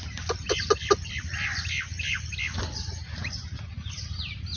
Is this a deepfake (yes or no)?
no